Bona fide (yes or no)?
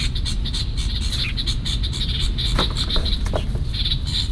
no